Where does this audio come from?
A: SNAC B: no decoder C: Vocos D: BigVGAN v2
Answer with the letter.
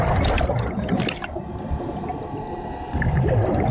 D